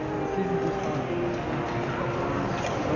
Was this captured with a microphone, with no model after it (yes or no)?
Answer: yes